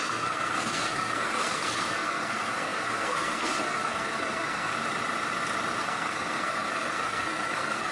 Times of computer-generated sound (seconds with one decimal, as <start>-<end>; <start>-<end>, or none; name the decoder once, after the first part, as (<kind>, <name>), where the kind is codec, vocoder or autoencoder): 0.0-4.7 (codec, SNAC); 5.8-7.9

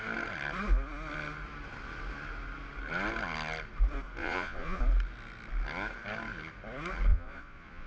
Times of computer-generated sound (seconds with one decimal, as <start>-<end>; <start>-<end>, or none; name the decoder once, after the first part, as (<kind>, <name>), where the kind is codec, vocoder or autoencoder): 4.2-4.8 (vocoder, Vocos); 7.1-7.9

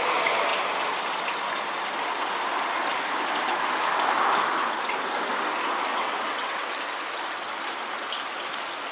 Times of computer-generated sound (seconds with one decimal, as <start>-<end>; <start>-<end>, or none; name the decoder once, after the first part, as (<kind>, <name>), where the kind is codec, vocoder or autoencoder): 5.9-6.6 (vocoder, WaveNeXt)